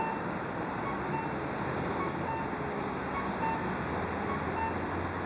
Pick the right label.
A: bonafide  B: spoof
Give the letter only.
A